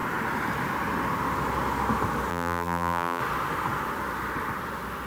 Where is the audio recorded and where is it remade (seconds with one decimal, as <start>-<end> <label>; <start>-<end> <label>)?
0.0-2.3 recorded; 2.3-3.2 remade; 3.2-5.1 recorded